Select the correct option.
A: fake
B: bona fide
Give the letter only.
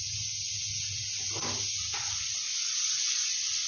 B